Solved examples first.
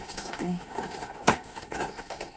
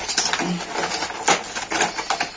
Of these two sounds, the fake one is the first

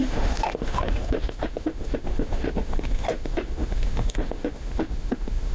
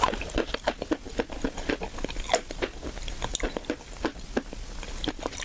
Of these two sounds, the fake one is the first